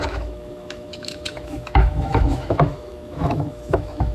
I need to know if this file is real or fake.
fake